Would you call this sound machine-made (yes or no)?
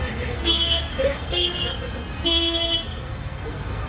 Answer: yes